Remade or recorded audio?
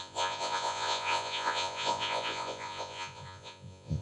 remade